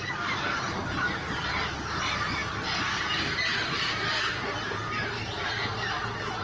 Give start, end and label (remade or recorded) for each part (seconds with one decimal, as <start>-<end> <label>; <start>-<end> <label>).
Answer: 0.0-6.4 recorded